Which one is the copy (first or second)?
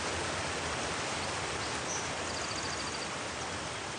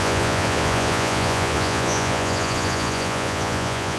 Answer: second